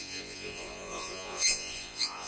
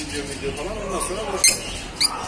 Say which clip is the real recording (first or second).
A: second